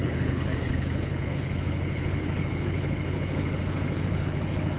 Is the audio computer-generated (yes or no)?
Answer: yes